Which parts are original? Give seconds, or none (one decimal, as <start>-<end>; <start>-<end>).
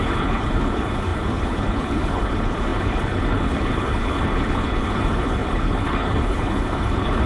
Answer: none